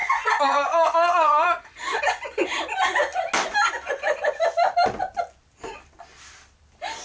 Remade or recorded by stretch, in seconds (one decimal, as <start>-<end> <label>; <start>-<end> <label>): 0.0-2.0 remade; 2.0-7.0 recorded